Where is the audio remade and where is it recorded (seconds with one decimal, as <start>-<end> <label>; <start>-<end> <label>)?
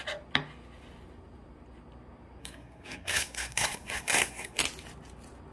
0.0-2.4 recorded; 2.4-4.6 remade; 4.6-5.5 recorded